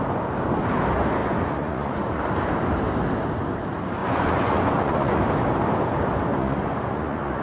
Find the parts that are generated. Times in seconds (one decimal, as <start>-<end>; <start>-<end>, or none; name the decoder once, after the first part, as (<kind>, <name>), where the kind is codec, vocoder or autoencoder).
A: 1.2-2.2 (vocoder, Vocos); 4.0-5.2; 6.3-7.4